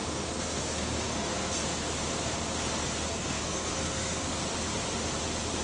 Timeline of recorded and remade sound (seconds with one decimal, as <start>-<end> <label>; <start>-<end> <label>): 0.0-1.9 remade; 1.9-3.1 recorded; 3.1-4.4 remade; 4.4-5.6 recorded